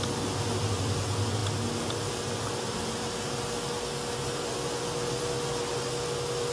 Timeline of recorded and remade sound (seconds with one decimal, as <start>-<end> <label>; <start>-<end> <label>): 0.0-6.5 recorded